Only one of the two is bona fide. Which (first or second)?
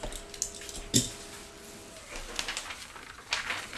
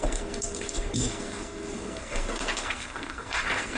first